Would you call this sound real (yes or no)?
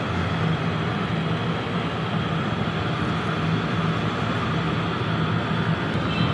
yes